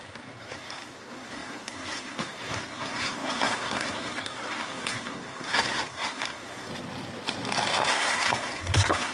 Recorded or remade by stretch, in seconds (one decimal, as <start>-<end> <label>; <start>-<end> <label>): 0.0-6.7 remade; 6.7-7.9 recorded; 7.9-9.1 remade